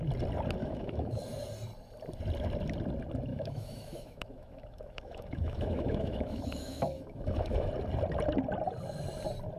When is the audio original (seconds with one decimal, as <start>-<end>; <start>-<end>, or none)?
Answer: 0.0-0.6; 1.2-3.3; 7.7-9.6